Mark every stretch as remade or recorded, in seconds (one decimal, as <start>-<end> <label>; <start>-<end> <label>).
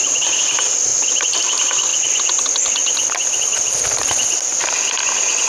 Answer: 0.0-0.9 remade; 0.9-1.4 recorded; 1.4-1.9 remade; 1.9-2.4 recorded; 2.4-5.5 remade